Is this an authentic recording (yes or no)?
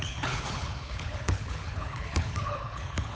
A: no